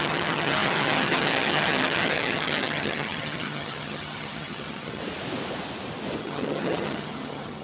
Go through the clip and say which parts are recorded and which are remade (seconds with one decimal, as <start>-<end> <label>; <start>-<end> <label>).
0.0-5.0 remade; 5.0-6.2 recorded; 6.2-7.6 remade